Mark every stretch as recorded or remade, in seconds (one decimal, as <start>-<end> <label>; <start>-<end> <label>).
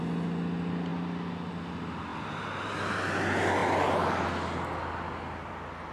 0.0-5.9 recorded